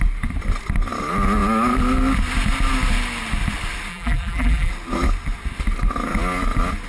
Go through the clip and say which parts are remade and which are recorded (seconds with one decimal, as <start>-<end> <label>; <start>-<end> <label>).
0.0-3.9 recorded; 3.9-4.7 remade; 4.7-6.9 recorded